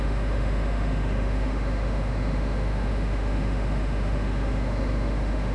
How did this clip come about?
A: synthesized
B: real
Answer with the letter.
A